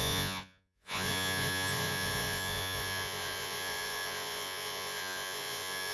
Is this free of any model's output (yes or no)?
no